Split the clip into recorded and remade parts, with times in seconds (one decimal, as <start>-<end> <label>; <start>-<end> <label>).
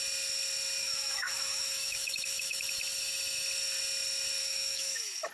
0.0-0.8 recorded; 0.8-2.6 remade; 2.6-4.4 recorded; 4.4-5.3 remade